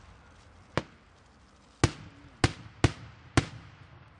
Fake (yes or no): no